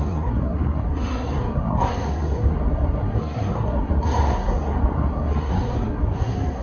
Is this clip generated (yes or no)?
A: yes